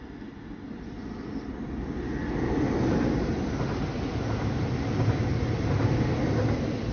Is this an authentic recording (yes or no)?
yes